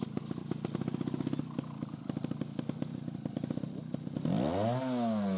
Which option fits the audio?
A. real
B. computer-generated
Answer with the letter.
A